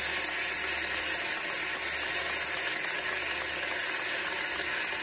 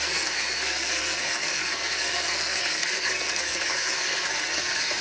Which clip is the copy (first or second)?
second